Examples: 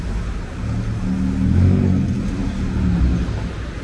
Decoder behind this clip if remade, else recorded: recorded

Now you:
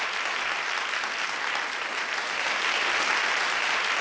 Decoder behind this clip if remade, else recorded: recorded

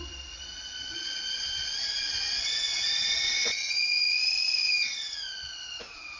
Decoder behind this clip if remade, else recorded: remade, vocoder, Vocos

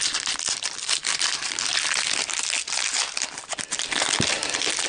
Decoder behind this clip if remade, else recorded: recorded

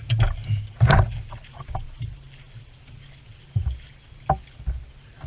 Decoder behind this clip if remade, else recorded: recorded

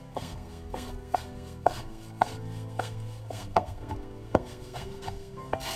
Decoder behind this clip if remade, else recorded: remade, codec, SNAC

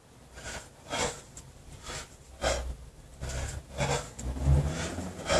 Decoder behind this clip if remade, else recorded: recorded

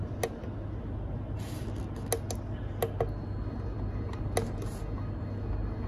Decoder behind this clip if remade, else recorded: recorded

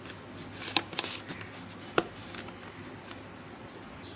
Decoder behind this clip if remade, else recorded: recorded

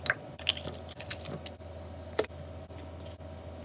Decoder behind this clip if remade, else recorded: recorded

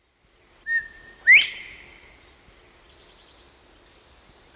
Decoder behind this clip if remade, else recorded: recorded